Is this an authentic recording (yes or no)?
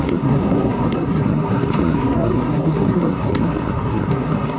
no